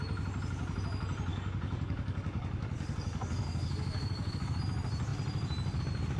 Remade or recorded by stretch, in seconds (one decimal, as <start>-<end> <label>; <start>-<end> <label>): 0.0-1.3 recorded; 1.3-4.5 remade; 4.5-6.2 recorded

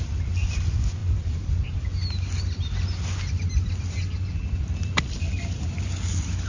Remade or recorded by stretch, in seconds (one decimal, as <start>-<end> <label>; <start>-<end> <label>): 0.0-6.5 recorded

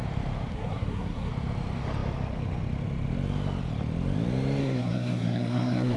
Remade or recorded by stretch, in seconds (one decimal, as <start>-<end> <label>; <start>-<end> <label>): 0.0-0.5 recorded; 0.5-1.3 remade; 1.3-4.6 recorded; 4.6-6.0 remade

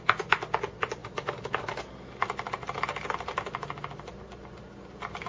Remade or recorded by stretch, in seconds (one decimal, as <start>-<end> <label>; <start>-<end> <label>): 0.0-1.0 recorded; 1.0-1.8 remade; 1.8-5.3 recorded

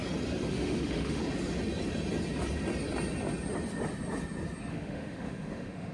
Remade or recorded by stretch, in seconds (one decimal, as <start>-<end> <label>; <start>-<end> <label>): 0.0-0.5 recorded; 0.5-1.2 remade; 1.2-4.7 recorded; 4.7-5.9 remade

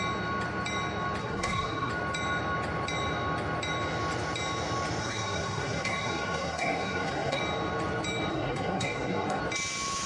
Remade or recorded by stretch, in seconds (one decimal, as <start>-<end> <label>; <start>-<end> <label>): 0.0-1.2 recorded; 1.2-1.9 remade; 1.9-5.0 recorded; 5.0-7.4 remade; 7.4-8.3 recorded; 8.3-9.4 remade; 9.4-10.1 recorded

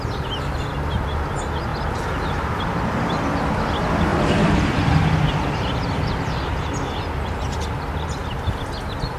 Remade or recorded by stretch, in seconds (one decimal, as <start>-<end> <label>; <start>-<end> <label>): 0.0-4.1 recorded; 4.1-7.0 remade; 7.0-9.2 recorded

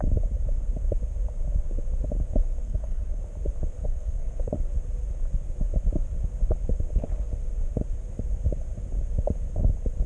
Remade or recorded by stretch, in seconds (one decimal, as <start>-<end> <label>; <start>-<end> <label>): 0.0-2.6 recorded; 2.6-3.2 remade; 3.2-3.8 recorded; 3.8-4.5 remade; 4.5-10.1 recorded